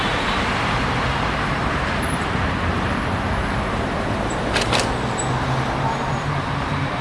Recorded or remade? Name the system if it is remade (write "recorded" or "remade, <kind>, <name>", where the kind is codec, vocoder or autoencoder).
remade, vocoder, BigVGAN v2